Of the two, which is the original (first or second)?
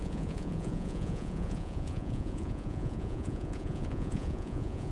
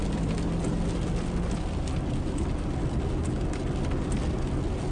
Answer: second